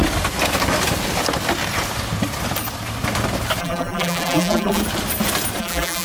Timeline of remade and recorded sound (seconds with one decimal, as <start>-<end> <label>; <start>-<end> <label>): 0.0-3.6 recorded; 3.6-4.8 remade; 4.8-5.6 recorded; 5.6-6.0 remade